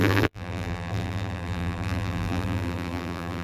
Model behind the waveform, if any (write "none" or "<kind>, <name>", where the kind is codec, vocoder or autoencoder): vocoder, BigVGAN v2